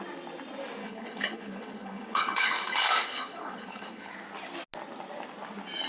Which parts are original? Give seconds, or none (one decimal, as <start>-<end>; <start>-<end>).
0.0-0.8; 4.1-5.9